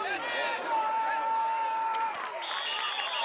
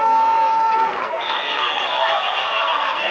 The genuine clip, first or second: first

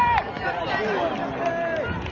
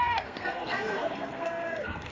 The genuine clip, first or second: first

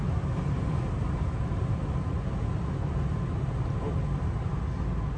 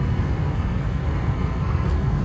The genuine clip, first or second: first